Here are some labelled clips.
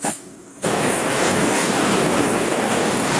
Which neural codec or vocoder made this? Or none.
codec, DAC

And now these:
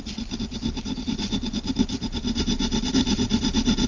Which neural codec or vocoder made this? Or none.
none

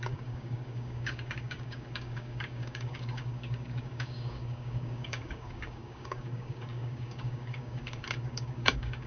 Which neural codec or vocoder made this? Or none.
codec, DAC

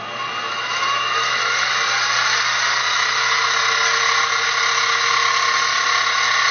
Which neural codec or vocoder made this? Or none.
none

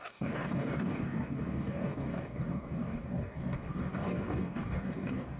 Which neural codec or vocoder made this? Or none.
codec, DAC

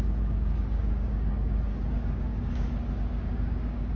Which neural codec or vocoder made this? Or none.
codec, DAC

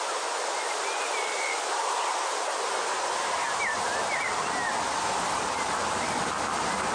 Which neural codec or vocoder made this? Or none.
none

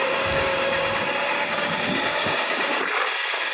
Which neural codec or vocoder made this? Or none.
codec, DAC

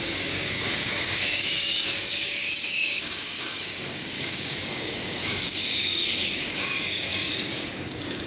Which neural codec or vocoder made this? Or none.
codec, DAC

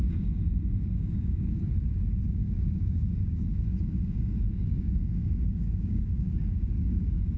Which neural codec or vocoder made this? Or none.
codec, DAC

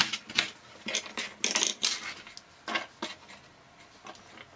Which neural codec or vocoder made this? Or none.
none